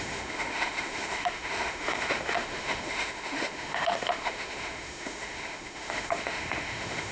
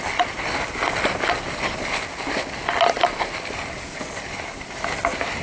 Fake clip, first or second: first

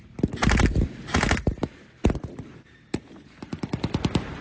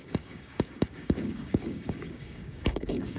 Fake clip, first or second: second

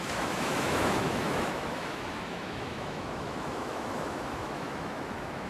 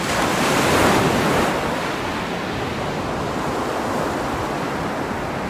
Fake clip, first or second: first